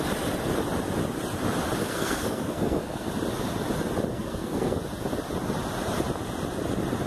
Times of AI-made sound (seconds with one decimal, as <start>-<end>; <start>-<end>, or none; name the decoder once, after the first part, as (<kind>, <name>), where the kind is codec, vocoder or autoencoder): 1.8-3.1 (codec, SNAC); 4.1-4.8